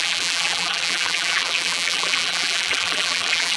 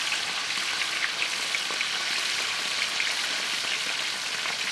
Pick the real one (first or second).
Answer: second